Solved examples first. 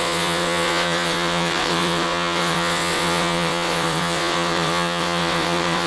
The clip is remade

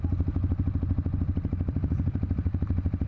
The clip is recorded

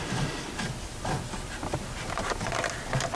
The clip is recorded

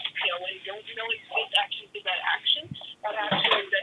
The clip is recorded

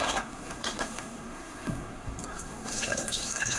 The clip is remade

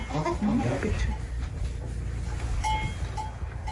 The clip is recorded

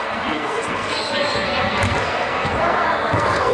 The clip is remade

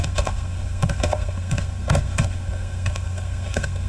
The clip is remade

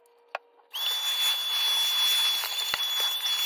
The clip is recorded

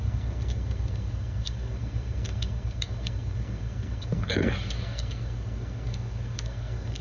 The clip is remade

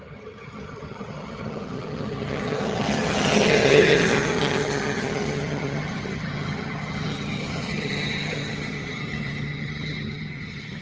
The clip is remade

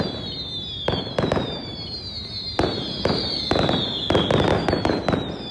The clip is recorded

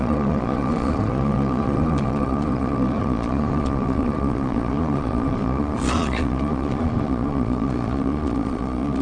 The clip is remade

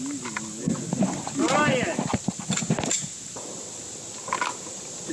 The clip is recorded